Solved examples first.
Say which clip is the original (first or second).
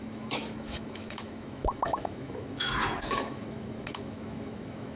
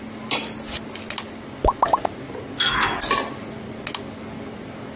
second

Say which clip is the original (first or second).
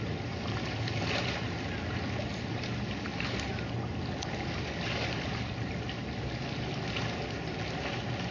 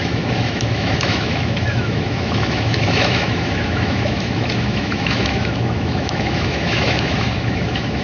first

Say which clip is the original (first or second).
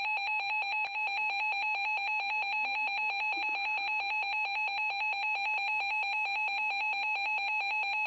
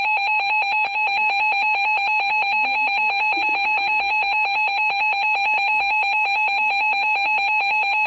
first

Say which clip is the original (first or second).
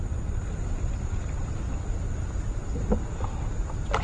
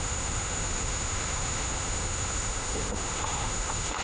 first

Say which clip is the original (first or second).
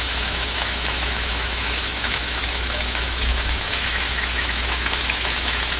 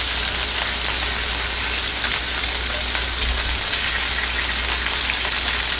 second